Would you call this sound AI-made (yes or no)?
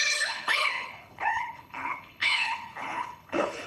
yes